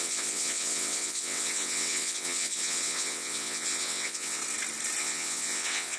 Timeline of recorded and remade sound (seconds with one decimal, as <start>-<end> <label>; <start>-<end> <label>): 0.0-4.4 remade; 4.4-5.0 recorded; 5.0-6.0 remade